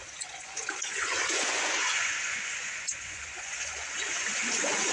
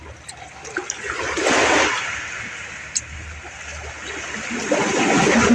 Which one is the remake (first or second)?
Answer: first